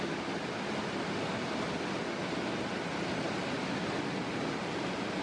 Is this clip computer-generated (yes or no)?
no